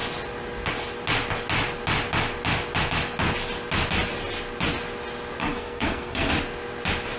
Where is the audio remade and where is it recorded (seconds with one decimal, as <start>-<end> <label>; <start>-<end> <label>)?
0.0-5.4 recorded; 5.4-6.3 remade; 6.3-7.2 recorded